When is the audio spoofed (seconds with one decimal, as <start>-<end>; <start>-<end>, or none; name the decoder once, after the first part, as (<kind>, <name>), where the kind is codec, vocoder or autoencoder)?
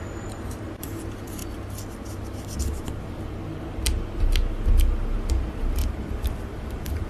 0.0-1.4 (vocoder, BigVGAN v2); 5.3-7.1